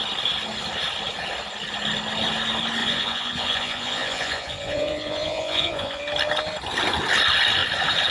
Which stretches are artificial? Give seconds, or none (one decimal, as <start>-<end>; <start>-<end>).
2.8-6.0

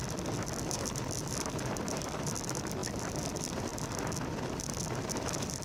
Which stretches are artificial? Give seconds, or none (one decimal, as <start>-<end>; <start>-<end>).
0.0-3.7; 5.1-5.6